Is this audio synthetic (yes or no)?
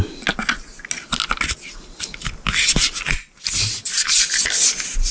no